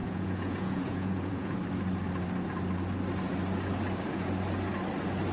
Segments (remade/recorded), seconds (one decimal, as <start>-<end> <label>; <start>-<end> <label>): 0.0-1.6 remade; 1.6-5.3 recorded